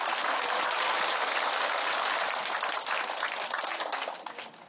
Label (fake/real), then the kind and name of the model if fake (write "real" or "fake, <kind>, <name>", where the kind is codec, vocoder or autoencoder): real